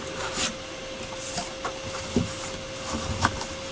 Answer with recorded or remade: recorded